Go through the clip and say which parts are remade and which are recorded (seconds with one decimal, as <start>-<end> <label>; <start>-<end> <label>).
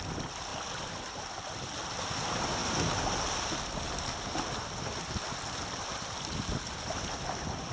0.0-7.7 recorded